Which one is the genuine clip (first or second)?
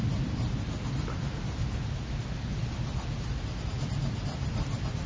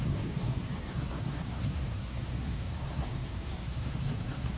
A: first